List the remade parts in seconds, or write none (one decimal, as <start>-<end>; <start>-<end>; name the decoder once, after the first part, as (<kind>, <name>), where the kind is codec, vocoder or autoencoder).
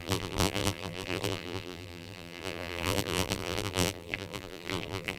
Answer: 0.0-5.2 (vocoder, BigVGAN v2)